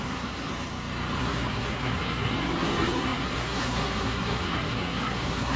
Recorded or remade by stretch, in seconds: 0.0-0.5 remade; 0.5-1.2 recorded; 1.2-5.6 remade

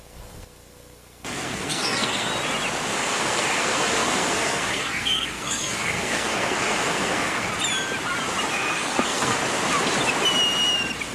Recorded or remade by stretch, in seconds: 0.0-2.3 remade; 2.3-2.9 recorded; 2.9-7.5 remade; 7.5-8.5 recorded; 8.5-9.4 remade; 9.4-11.1 recorded

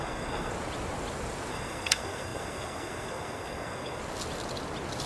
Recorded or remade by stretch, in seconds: 0.0-0.5 remade; 0.5-1.5 recorded; 1.5-4.0 remade; 4.0-5.1 recorded

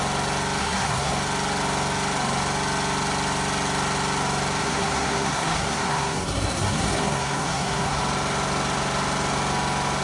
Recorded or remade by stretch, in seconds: 0.0-0.6 recorded; 0.6-1.1 remade; 1.1-4.6 recorded; 4.6-8.0 remade; 8.0-10.0 recorded

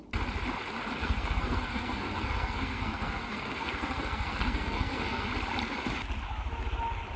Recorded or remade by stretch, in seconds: 0.0-1.0 recorded; 1.0-5.3 remade; 5.3-7.2 recorded